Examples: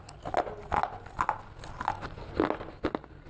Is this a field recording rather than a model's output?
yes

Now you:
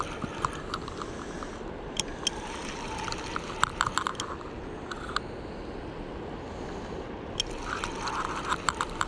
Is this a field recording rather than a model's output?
yes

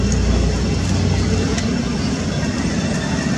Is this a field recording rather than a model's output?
yes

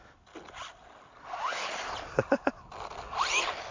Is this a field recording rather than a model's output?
yes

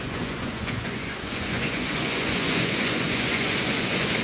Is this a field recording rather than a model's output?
no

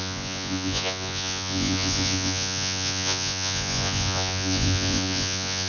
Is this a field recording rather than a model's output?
no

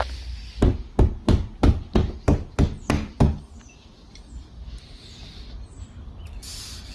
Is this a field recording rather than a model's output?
yes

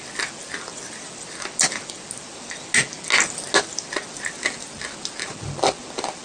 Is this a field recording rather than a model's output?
yes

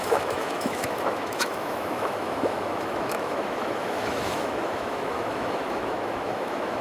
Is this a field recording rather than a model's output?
no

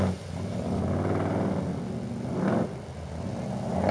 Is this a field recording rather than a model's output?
yes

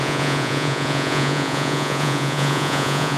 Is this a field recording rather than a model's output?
no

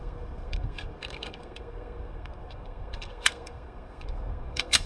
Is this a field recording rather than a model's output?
no